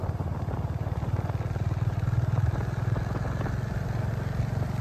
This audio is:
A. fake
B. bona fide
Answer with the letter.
B